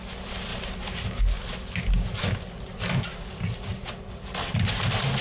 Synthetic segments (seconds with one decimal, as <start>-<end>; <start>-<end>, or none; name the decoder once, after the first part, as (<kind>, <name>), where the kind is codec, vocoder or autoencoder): 0.5-1.2 (vocoder, BigVGAN v2); 3.7-5.2